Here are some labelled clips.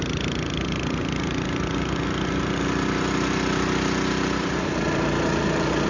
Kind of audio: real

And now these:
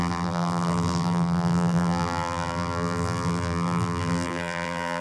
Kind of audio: fake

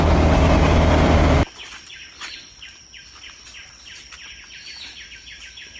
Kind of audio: fake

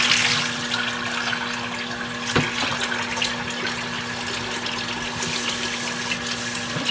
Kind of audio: real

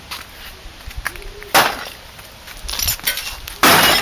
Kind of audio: real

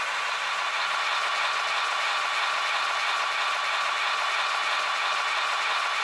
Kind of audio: real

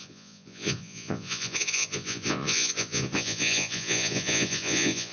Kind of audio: fake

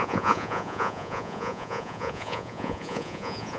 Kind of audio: fake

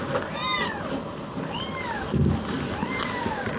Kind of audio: real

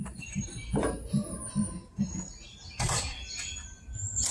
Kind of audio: real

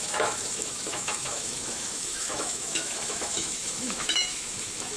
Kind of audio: fake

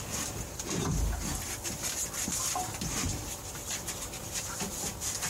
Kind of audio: fake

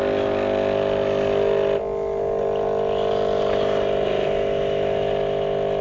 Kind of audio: real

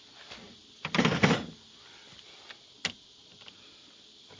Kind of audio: real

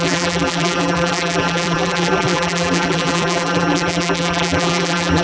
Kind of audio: fake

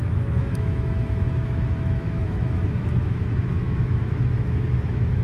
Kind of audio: fake